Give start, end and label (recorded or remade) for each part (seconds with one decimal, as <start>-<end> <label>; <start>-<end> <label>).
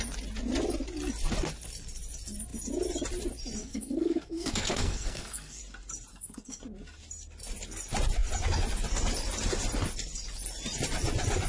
0.0-3.6 recorded; 3.6-5.6 remade; 5.6-6.1 recorded; 6.1-6.6 remade; 6.6-11.5 recorded